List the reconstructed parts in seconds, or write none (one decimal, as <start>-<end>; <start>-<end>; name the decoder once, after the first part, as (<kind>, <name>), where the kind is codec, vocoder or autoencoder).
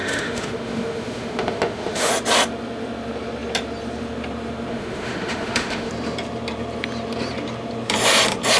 0.0-2.1 (autoencoder, DAC-VAE); 4.7-5.9